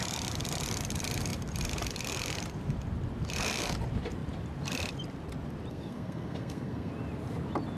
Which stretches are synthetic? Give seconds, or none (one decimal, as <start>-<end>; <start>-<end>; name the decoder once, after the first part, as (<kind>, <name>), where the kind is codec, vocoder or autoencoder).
5.7-6.9 (codec, SNAC)